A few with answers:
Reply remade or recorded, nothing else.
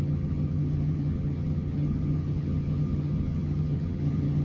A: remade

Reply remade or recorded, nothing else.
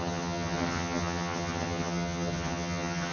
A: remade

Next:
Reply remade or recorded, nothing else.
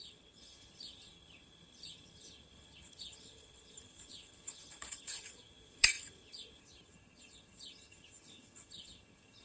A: remade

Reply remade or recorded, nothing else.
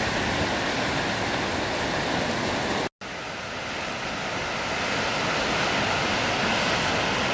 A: recorded